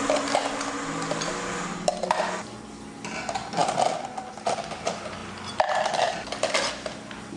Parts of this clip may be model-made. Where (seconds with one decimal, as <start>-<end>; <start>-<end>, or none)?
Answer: none

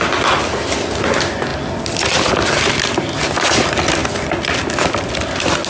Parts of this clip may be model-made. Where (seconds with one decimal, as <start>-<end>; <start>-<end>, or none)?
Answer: none

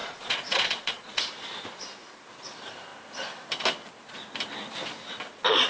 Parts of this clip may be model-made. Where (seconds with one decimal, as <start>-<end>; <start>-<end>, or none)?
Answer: 0.0-1.2